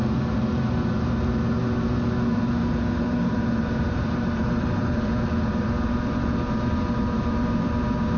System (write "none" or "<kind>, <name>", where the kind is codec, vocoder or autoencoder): vocoder, BigVGAN v2